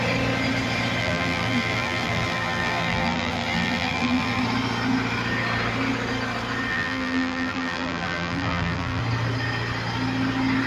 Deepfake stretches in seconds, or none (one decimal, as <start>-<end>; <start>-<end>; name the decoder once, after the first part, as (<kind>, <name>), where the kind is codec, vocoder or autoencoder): 1.0-4.4 (vocoder, BigVGAN v2); 6.7-9.0